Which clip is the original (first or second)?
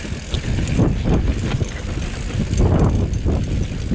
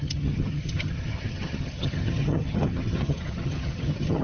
first